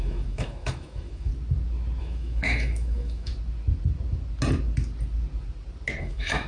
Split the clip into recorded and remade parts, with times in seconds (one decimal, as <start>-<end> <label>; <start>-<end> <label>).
0.0-1.3 remade; 1.3-2.0 recorded; 2.0-3.3 remade; 3.3-6.0 recorded; 6.0-6.5 remade